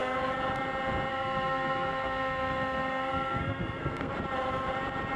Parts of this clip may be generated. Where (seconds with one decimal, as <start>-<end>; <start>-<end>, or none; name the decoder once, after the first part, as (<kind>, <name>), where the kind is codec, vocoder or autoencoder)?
1.1-4.1 (codec, SNAC)